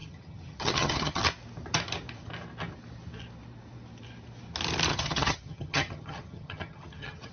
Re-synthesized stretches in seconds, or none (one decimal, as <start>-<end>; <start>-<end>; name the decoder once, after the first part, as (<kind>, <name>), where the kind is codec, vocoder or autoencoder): 0.0-1.2 (vocoder, HiFi-GAN); 4.9-7.3